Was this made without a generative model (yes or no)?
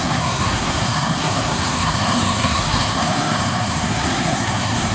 no